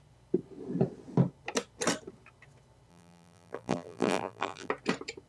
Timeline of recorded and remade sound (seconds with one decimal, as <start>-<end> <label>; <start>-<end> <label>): 0.0-2.9 recorded; 2.9-4.7 remade; 4.7-5.3 recorded